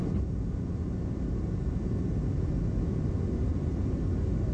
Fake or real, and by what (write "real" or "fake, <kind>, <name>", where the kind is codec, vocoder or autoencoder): real